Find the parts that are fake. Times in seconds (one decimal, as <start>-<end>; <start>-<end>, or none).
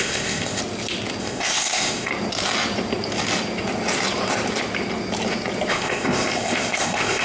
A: 0.0-0.6; 1.2-2.1; 5.7-7.2